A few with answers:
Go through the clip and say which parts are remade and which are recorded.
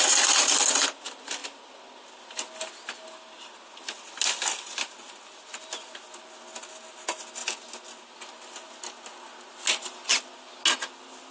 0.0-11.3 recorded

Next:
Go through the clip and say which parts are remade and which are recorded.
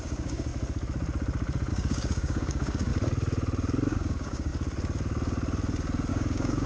0.0-0.5 remade; 0.5-1.7 recorded; 1.7-2.9 remade; 2.9-3.9 recorded; 3.9-4.5 remade; 4.5-6.1 recorded; 6.1-6.7 remade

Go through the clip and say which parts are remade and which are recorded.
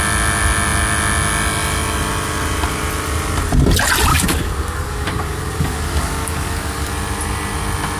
0.0-4.1 recorded; 4.1-6.9 remade; 6.9-8.0 recorded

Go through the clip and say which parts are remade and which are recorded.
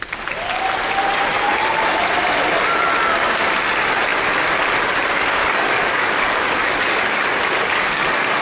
0.0-5.4 recorded; 5.4-8.4 remade